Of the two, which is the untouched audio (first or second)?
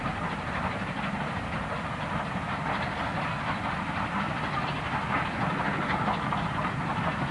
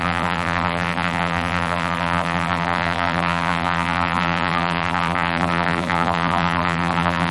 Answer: first